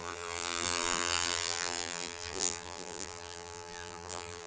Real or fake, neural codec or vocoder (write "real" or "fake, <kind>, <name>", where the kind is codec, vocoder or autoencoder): fake, vocoder, BigVGAN v2